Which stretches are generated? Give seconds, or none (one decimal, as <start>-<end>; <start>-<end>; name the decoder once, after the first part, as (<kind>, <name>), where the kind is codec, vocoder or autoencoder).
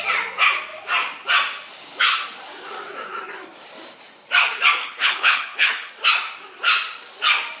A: 4.8-5.9 (codec, HILCodec)